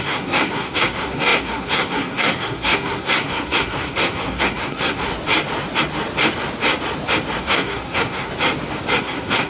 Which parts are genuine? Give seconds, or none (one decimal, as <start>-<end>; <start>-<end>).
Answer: 5.1-7.4; 8.3-9.0